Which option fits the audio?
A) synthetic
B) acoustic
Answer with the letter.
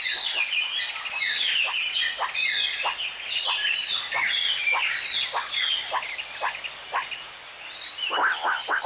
B